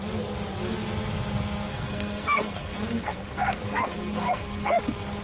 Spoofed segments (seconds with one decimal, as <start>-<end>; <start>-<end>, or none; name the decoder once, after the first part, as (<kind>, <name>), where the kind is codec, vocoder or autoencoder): 1.7-4.8 (codec, SNAC)

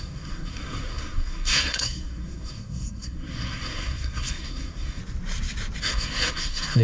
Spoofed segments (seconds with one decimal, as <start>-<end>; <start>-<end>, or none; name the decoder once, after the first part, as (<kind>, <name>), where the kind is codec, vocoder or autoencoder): 0.0-5.0 (codec, SNAC); 5.8-6.8

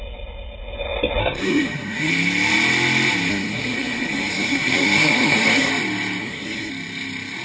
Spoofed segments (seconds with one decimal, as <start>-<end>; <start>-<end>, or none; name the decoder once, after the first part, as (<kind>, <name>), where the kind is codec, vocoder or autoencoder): 1.2-2.1 (codec, SNAC); 3.3-5.7; 6.2-6.7

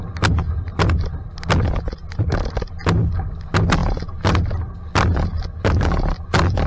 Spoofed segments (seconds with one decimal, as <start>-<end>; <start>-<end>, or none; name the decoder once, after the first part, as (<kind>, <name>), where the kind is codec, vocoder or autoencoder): none

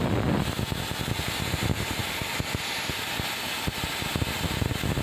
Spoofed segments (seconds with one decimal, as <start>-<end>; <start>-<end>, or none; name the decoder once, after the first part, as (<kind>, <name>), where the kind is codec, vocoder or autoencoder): none